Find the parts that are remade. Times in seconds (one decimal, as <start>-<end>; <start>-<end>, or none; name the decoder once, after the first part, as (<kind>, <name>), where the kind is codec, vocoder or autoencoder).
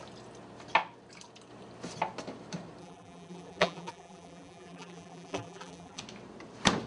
2.8-6.0 (vocoder, BigVGAN v2)